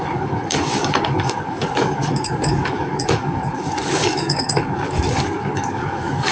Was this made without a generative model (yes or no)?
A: no